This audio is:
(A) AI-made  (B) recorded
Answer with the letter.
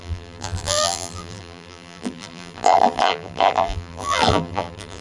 A